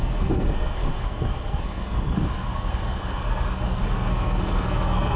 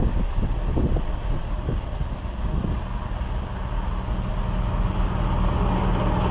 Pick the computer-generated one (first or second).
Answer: first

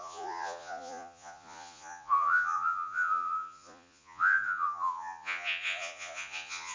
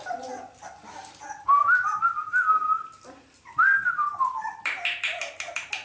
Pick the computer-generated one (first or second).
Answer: first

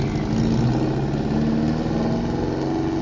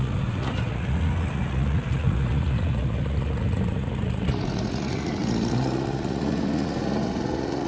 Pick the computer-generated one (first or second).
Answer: second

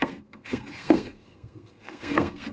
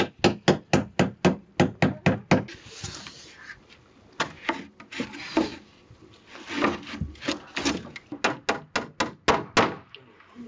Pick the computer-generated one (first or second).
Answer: first